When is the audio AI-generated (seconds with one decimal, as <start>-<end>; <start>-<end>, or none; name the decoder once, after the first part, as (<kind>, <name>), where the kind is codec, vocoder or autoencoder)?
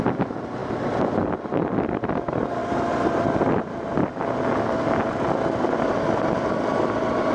none